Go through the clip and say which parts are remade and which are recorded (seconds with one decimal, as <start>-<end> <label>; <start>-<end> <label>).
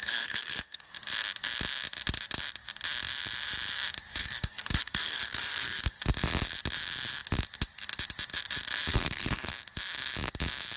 0.0-0.9 remade; 0.9-4.2 recorded; 4.2-6.0 remade; 6.0-8.9 recorded; 8.9-9.5 remade; 9.5-10.8 recorded